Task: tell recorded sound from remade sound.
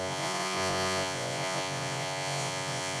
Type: remade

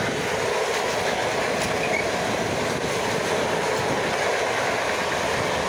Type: recorded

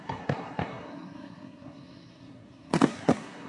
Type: remade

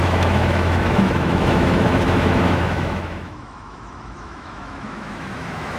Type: remade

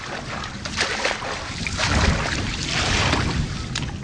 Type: recorded